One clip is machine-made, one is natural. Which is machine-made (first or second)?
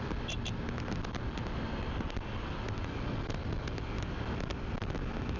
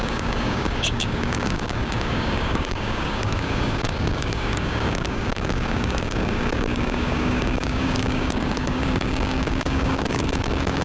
second